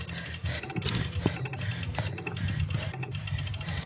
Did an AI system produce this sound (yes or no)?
no